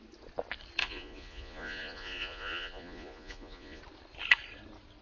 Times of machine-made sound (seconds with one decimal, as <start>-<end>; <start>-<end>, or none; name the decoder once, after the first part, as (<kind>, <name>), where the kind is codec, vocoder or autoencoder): 0.8-3.8 (vocoder, Vocos)